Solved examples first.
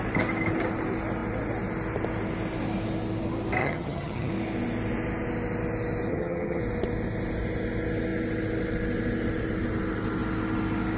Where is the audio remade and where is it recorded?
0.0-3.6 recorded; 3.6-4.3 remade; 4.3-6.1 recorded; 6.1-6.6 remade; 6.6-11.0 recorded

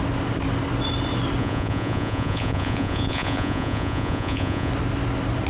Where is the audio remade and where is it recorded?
0.0-1.4 recorded; 1.4-4.7 remade; 4.7-5.5 recorded

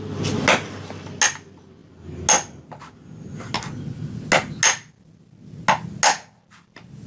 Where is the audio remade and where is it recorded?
0.0-7.1 recorded

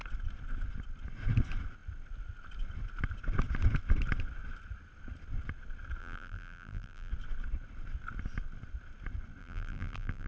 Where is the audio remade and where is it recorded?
0.0-6.0 recorded; 6.0-7.1 remade; 7.1-9.4 recorded; 9.4-10.3 remade